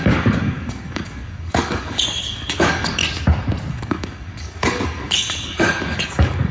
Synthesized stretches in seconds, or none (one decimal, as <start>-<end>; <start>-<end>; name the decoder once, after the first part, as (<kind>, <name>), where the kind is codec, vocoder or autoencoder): 0.0-3.0 (codec, DAC); 3.7-6.5